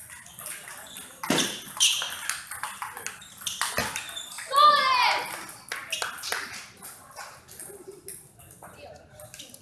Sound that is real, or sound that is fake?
real